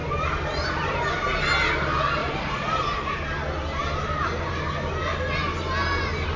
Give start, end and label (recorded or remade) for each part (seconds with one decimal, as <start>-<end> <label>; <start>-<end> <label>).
0.0-1.0 remade; 1.0-2.2 recorded; 2.2-2.8 remade; 2.8-3.8 recorded; 3.8-4.5 remade; 4.5-6.4 recorded